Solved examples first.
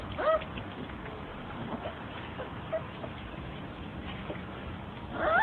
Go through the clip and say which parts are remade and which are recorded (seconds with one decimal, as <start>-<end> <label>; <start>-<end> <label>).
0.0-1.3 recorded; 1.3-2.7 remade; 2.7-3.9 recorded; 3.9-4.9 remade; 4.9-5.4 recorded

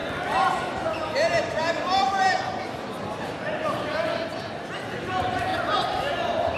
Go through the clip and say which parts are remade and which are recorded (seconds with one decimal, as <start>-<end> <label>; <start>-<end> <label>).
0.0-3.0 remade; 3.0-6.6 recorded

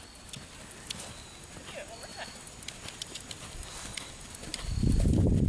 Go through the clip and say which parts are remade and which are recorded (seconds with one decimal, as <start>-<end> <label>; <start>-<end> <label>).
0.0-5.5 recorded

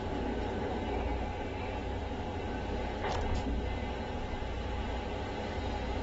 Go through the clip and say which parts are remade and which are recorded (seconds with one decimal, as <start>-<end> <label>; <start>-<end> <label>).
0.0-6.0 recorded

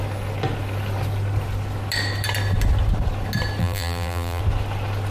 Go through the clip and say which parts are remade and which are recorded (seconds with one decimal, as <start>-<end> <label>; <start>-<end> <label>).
0.0-3.6 recorded; 3.6-4.4 remade; 4.4-5.1 recorded

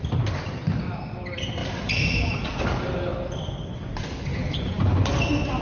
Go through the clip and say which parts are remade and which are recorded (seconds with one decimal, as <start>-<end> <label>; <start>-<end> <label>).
0.0-3.1 recorded; 3.1-3.7 remade; 3.7-4.3 recorded; 4.3-4.8 remade; 4.8-5.6 recorded